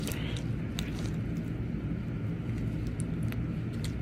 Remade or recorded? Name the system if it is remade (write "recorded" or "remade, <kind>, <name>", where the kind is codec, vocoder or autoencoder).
recorded